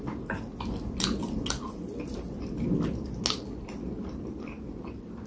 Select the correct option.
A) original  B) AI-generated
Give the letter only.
A